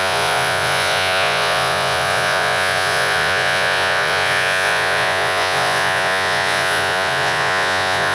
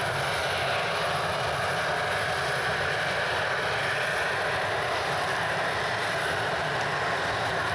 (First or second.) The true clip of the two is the second